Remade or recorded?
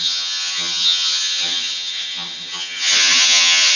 remade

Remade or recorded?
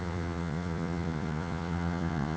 remade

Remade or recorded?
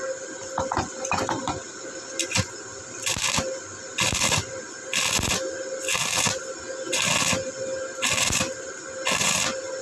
recorded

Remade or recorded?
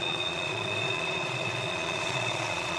remade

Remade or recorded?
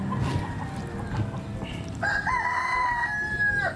recorded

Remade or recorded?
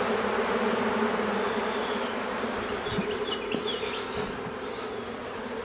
recorded